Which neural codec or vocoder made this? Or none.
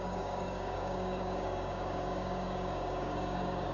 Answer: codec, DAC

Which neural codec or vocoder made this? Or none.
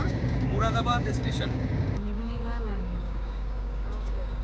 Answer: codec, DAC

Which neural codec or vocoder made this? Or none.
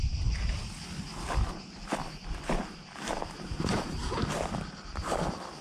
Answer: none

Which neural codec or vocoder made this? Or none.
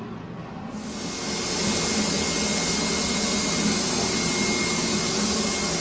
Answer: none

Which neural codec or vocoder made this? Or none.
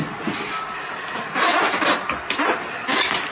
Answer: none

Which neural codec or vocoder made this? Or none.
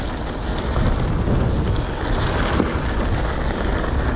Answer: none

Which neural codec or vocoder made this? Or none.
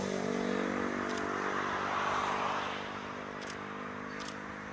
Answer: none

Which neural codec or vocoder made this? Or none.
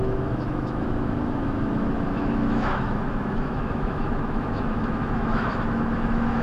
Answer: autoencoder, DAC-VAE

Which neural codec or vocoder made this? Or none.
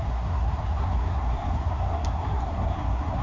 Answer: codec, SNAC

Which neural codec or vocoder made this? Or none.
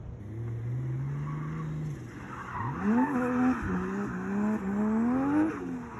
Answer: none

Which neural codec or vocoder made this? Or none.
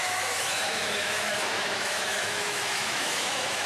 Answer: autoencoder, DAC-VAE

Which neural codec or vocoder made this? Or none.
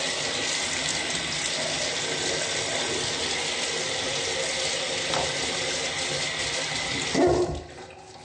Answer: none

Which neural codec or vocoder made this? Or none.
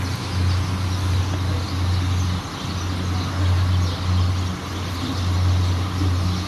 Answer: none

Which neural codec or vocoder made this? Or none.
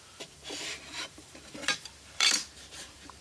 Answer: vocoder, BigVGAN v2